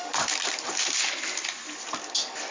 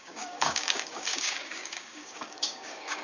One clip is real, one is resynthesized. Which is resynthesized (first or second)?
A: second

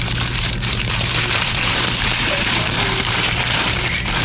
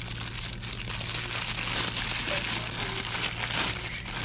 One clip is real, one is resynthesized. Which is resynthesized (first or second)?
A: first